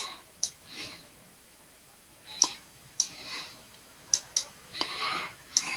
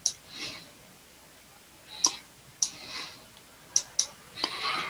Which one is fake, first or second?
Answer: first